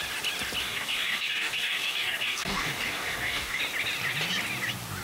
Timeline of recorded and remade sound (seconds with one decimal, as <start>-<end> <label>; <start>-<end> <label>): 0.0-0.6 recorded; 0.6-3.6 remade; 3.6-5.0 recorded